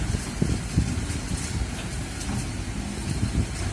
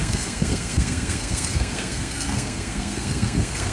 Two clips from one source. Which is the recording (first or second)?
first